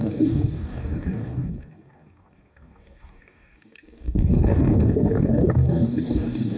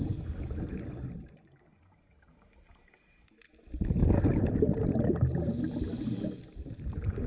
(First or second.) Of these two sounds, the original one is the second